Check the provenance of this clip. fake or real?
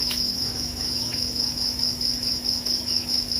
fake